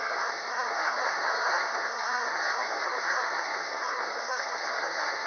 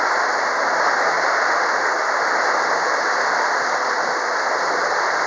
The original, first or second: second